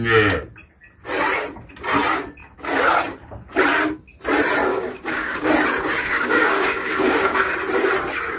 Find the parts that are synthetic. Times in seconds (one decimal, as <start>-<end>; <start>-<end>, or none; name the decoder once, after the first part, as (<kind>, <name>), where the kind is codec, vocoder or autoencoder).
4.7-5.5 (codec, DAC); 6.0-7.5